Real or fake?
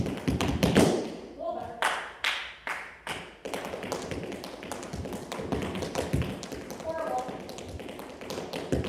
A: real